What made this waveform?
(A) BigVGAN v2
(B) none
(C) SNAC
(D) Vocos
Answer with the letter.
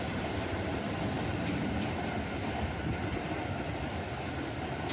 B